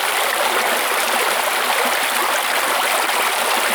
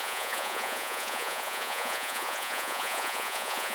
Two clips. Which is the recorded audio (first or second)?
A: first